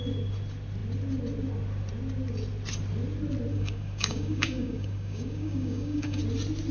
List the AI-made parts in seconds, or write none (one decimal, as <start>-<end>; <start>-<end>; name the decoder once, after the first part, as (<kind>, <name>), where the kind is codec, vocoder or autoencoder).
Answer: 3.5-6.2 (codec, DAC)